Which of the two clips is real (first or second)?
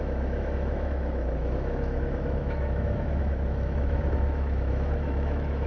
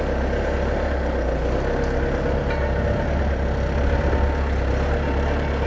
second